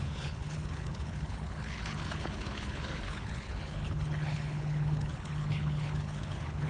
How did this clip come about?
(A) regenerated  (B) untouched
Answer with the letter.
A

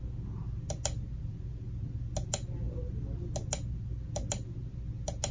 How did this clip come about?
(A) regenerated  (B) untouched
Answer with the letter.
B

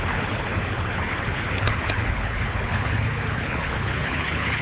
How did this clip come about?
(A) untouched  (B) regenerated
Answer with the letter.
B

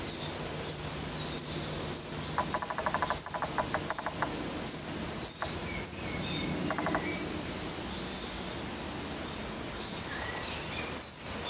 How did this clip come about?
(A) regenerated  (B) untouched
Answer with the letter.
B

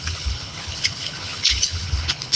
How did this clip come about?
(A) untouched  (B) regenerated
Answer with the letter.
B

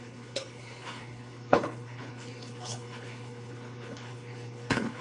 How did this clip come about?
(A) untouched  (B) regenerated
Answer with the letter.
B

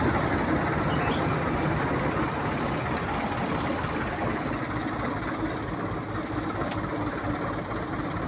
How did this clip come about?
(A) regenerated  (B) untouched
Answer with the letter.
B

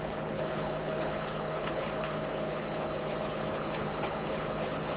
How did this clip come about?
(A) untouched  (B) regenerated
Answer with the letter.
B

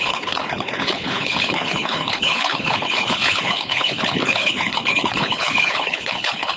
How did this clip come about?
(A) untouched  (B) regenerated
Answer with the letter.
B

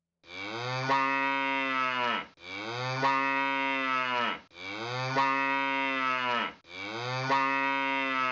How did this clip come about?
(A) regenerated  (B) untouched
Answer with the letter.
B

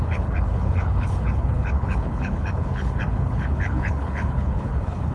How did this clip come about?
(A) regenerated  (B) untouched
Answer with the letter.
A